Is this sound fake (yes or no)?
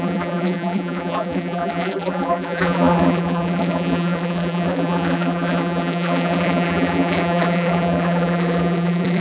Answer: yes